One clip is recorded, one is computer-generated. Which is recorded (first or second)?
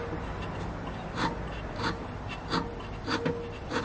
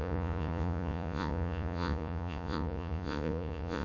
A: first